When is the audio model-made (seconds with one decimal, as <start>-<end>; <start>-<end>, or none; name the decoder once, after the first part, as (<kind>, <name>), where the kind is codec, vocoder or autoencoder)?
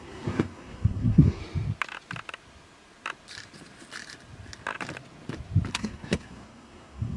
0.0-1.4 (codec, SNAC); 5.7-7.2